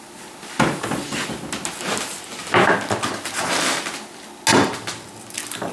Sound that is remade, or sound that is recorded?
recorded